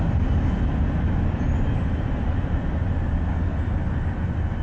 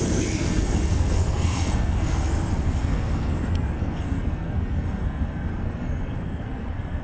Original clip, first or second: first